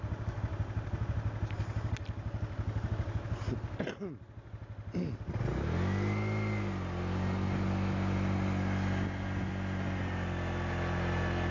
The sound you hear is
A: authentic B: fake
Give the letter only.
A